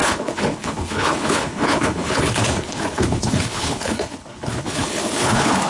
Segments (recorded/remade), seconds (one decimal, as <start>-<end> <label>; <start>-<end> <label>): 0.0-5.7 remade